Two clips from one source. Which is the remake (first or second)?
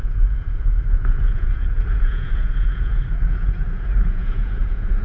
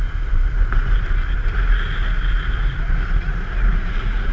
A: first